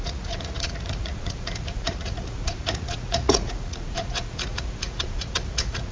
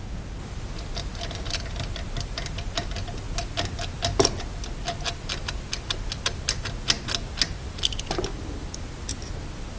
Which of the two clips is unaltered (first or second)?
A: second